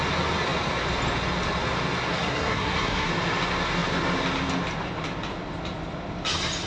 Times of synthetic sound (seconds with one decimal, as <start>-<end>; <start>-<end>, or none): 2.1-3.1